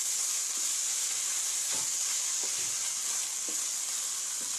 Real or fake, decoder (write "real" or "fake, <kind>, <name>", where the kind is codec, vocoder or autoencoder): real